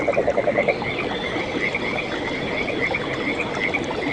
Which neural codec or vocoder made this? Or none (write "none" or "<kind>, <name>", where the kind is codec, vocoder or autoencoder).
none